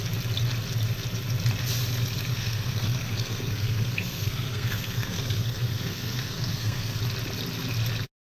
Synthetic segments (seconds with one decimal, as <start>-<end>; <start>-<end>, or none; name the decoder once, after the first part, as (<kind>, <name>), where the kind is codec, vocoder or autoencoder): 2.3-7.0 (codec, SNAC)